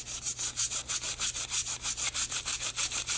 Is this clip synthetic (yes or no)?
yes